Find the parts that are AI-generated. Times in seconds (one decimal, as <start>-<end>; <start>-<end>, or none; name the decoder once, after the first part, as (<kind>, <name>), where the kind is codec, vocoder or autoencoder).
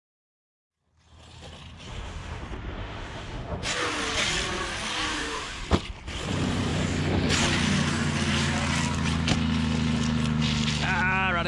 1.9-2.4 (autoencoder, DAC-VAE); 2.8-3.6; 5.1-5.6